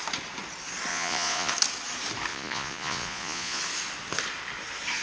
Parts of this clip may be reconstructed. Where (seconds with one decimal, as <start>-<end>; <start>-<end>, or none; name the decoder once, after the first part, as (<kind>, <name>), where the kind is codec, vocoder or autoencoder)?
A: 0.9-1.5 (vocoder, Vocos); 2.3-3.6